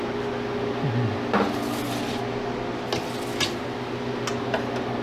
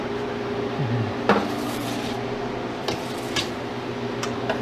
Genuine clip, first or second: first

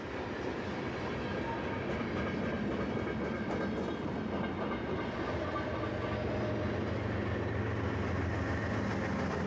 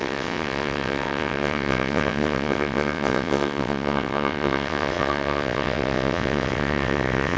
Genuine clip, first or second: first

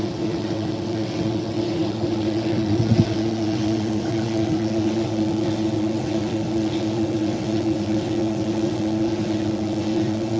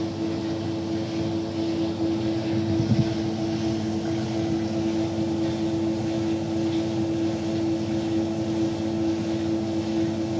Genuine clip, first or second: second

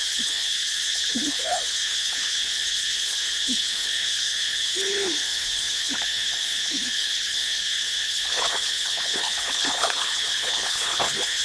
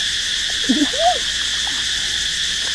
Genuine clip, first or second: second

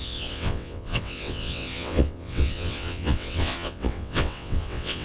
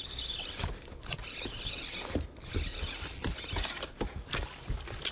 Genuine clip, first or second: second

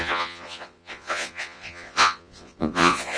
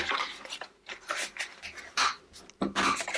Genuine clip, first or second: second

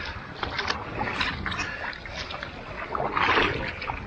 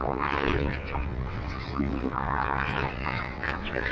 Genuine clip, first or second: first